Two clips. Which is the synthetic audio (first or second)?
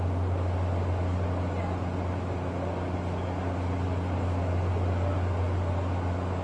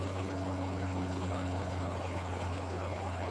second